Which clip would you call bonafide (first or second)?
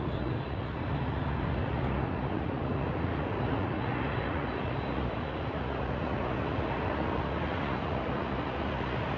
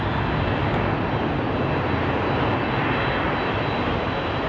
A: second